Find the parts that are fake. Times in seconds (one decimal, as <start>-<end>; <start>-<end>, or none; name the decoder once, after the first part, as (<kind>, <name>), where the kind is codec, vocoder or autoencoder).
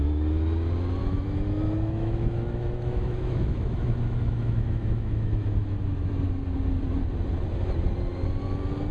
1.0-6.1 (autoencoder, DAC-VAE)